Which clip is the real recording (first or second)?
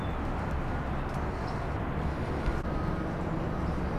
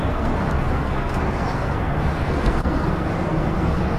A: first